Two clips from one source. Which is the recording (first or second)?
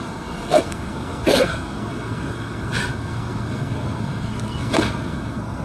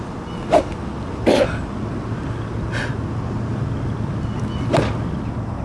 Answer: second